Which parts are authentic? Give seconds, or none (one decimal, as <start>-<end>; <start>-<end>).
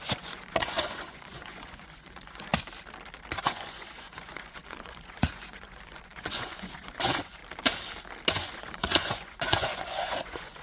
2.5-3.4; 7.4-8.3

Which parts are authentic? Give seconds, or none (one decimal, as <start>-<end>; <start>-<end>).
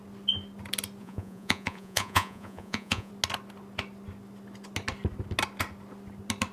0.0-1.0; 3.1-6.5